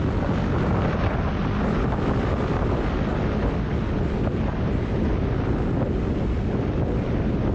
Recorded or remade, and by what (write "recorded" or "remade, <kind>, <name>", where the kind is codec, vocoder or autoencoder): recorded